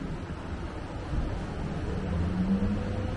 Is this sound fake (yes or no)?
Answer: no